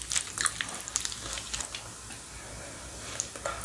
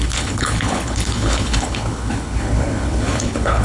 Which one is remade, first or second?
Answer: second